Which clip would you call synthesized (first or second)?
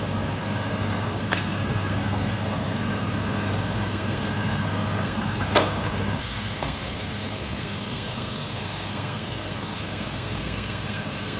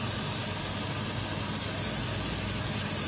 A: first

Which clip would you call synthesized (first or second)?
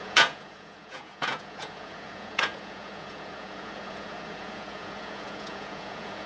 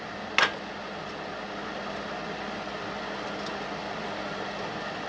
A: first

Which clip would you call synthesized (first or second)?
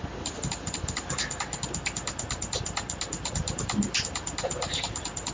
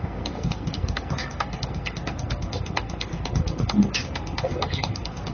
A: second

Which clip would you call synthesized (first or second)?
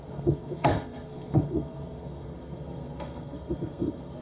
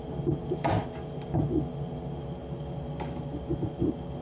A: first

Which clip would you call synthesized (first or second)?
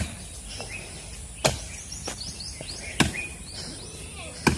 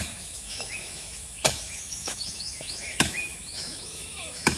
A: second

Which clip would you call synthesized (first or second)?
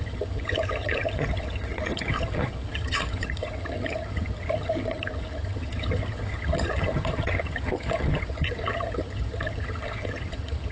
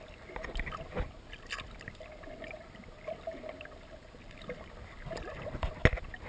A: first